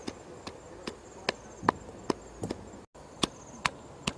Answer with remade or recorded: recorded